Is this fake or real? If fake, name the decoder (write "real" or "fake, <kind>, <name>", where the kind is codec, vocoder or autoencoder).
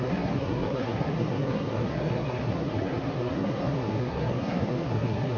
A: fake, codec, SNAC